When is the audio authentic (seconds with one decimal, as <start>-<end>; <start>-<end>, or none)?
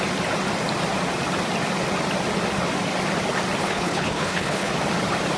0.0-3.6; 4.7-5.4